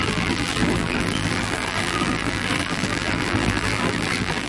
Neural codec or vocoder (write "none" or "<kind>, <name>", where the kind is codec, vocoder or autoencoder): vocoder, BigVGAN v2